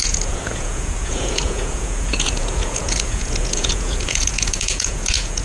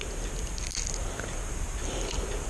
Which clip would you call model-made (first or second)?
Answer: first